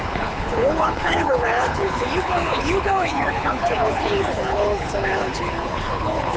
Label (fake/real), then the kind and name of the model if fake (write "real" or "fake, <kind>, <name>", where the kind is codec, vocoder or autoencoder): fake, codec, HILCodec